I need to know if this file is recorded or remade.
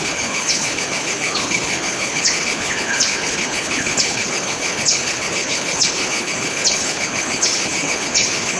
remade